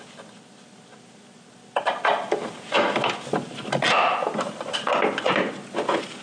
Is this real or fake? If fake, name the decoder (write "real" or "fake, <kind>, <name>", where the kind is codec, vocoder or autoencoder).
real